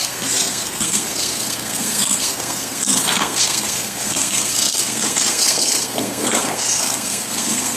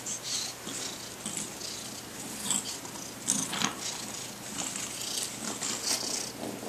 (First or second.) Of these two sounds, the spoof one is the first